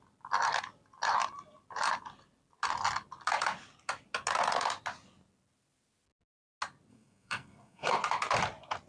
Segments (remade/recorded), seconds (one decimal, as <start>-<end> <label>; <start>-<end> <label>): 0.0-6.9 recorded; 6.9-7.9 remade; 7.9-8.9 recorded